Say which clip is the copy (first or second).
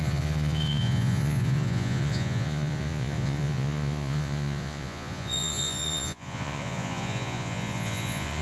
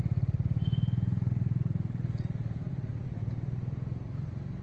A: first